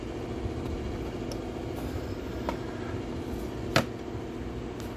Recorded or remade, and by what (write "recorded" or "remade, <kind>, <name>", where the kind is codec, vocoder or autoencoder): recorded